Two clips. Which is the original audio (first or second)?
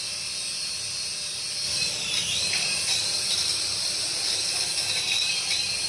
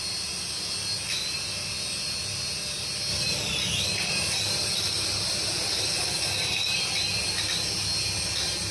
second